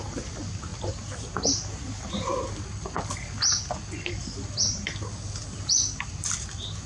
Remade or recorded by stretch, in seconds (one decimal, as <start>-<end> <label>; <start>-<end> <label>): 0.0-6.9 recorded